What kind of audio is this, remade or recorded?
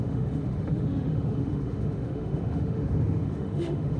remade